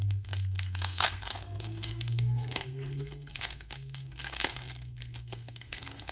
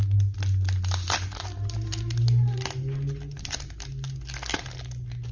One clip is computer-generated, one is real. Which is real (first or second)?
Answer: second